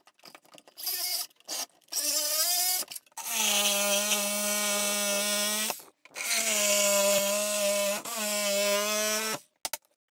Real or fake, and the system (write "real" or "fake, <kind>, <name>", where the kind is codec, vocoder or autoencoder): real